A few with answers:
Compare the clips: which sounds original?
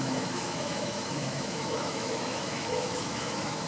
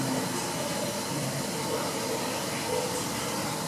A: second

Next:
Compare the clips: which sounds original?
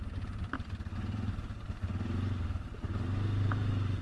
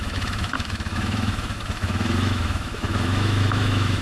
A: first